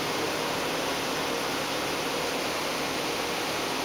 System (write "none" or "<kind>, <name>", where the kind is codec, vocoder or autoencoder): vocoder, BigVGAN v2